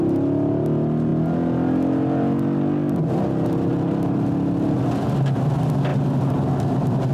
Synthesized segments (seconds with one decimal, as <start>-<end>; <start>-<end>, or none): none